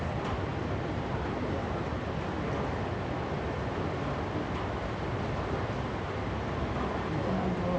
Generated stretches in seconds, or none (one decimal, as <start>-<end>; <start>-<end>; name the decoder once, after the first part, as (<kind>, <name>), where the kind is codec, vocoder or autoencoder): none